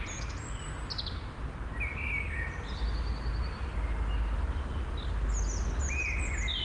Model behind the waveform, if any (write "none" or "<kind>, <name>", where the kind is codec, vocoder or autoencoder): none